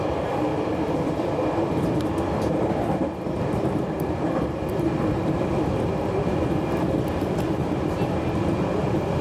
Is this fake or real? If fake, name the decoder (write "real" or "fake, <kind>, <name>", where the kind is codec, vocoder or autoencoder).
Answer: fake, vocoder, BigVGAN v2